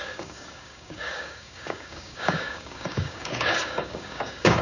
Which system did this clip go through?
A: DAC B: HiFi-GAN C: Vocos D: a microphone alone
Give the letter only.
A